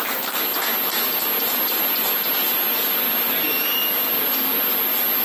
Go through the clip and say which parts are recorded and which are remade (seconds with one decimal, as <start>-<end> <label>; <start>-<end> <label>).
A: 0.0-5.2 recorded